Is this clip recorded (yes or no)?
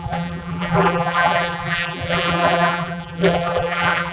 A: no